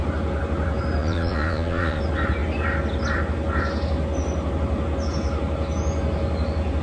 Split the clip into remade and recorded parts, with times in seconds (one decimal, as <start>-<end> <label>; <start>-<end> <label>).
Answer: 0.0-1.0 recorded; 1.0-2.0 remade; 2.0-6.8 recorded